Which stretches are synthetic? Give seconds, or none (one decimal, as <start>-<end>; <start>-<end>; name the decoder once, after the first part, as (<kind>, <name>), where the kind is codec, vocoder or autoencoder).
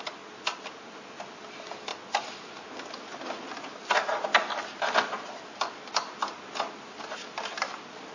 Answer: none